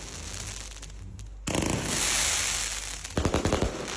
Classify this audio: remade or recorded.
recorded